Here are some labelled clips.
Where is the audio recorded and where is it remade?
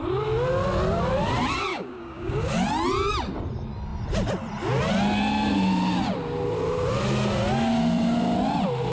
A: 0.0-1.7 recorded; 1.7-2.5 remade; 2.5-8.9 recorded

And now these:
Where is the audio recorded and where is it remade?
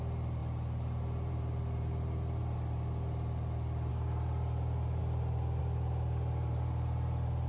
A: 0.0-0.4 remade; 0.4-1.3 recorded; 1.3-5.0 remade; 5.0-5.6 recorded; 5.6-7.5 remade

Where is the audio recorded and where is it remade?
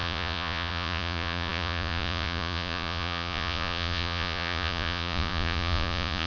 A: 0.0-6.3 remade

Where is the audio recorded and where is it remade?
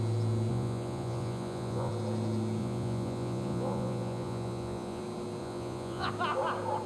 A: 0.0-0.5 recorded; 0.5-1.9 remade; 1.9-2.6 recorded; 2.6-5.0 remade; 5.0-5.4 recorded; 5.4-6.1 remade; 6.1-6.9 recorded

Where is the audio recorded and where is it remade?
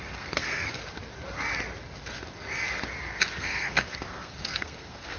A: 0.0-0.8 remade; 0.8-3.4 recorded; 3.4-5.2 remade